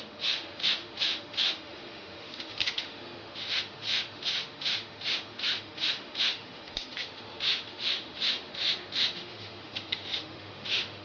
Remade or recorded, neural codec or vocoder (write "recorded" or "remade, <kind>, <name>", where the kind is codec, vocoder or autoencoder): remade, autoencoder, DAC-VAE